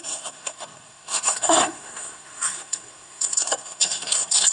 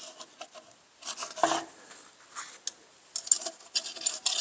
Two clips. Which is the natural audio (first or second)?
second